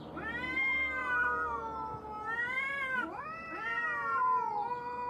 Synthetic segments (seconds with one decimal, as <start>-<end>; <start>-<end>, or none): none